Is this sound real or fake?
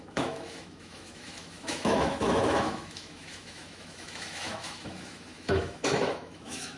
fake